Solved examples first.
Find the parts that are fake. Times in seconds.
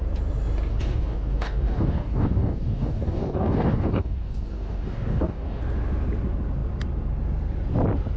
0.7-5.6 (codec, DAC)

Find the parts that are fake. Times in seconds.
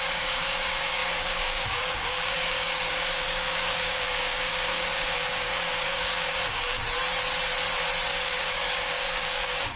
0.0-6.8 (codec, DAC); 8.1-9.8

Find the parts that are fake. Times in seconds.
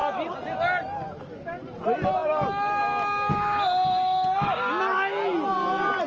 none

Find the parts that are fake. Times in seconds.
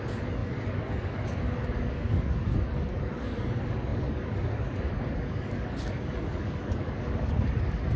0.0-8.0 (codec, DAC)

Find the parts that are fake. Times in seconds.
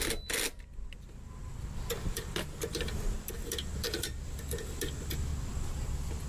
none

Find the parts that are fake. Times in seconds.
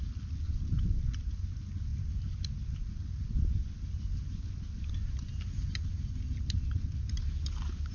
none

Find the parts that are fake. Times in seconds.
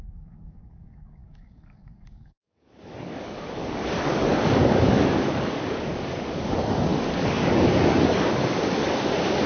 0.0-9.5 (codec, DAC)